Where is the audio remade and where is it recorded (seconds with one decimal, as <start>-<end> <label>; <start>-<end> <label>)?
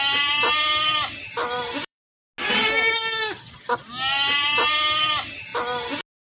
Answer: 0.0-1.4 recorded; 1.4-2.1 remade; 2.1-6.2 recorded